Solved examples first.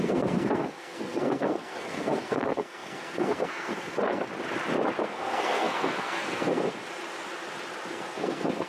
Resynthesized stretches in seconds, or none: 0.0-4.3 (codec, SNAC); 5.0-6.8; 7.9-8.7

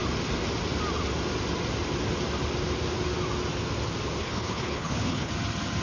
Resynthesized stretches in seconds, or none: 4.2-5.3 (codec, HILCodec)

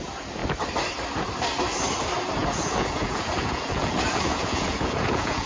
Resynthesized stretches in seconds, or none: 2.4-5.5 (vocoder, Vocos)

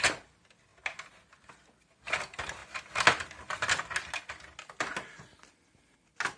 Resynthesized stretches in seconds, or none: none

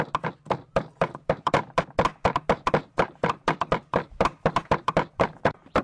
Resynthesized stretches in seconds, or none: 1.1-1.8 (vocoder, BigVGAN v2); 2.2-5.8

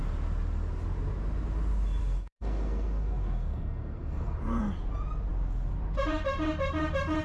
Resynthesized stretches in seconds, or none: 2.0-4.6 (codec, SNAC)

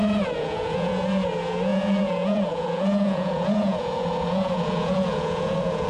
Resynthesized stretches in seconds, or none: 0.0-5.9 (vocoder, Vocos)